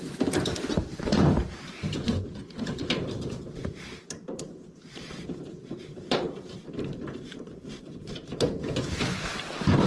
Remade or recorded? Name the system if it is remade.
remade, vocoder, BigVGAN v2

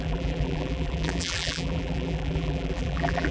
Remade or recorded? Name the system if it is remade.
remade, vocoder, BigVGAN v2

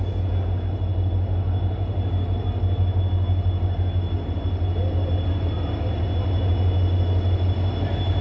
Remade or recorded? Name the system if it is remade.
recorded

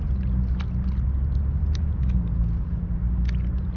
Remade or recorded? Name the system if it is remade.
recorded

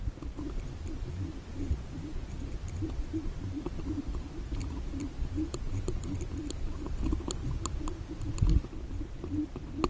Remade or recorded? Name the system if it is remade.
recorded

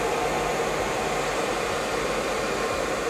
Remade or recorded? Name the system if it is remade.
recorded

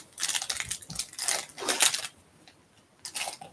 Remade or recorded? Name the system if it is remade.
recorded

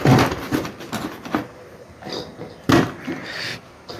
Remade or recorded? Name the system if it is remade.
recorded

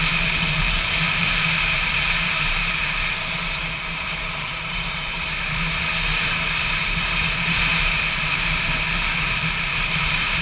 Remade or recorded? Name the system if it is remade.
remade, vocoder, BigVGAN v2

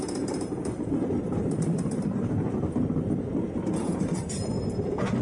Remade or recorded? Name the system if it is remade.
remade, vocoder, BigVGAN v2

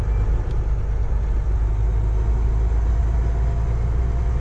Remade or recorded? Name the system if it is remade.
recorded